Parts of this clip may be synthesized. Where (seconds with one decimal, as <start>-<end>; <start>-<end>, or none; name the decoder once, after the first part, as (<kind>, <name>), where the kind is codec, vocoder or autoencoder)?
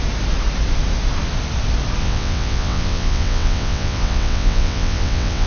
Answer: 2.0-5.5 (vocoder, WaveNeXt)